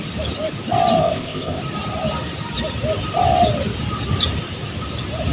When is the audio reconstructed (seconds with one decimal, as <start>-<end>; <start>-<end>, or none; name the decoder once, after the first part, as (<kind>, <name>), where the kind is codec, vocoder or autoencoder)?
1.0-1.6 (codec, ZipCodec)